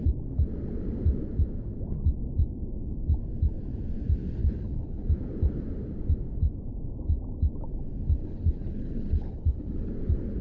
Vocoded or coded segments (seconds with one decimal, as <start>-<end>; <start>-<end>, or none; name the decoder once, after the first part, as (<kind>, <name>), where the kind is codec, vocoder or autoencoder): 4.4-5.1 (codec, HILCodec); 8.2-9.9